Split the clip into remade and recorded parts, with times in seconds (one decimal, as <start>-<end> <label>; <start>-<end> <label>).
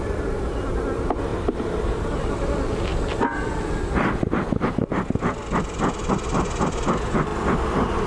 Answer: 0.0-8.1 recorded